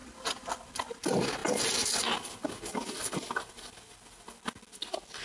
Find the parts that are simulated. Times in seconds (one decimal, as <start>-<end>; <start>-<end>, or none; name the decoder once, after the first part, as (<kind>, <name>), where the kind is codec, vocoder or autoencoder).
none